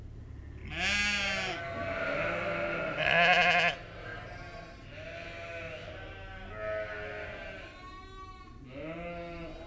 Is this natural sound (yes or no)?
yes